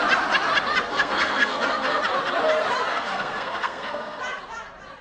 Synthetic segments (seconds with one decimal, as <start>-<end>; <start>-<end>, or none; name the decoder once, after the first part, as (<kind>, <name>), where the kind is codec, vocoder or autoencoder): 0.9-2.0 (codec, SNAC); 2.9-4.2

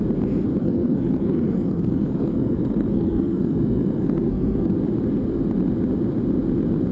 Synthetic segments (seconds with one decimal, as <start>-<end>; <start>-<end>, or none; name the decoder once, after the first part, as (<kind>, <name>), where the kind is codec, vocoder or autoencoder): 0.6-4.7 (codec, SNAC)

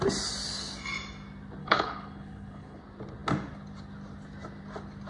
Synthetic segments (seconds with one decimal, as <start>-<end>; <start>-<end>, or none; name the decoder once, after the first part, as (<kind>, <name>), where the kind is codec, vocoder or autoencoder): 1.6-2.8 (codec, HILCodec)